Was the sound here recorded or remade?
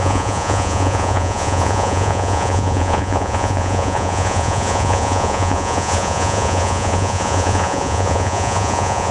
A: remade